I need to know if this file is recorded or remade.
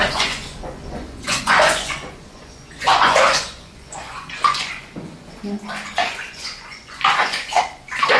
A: remade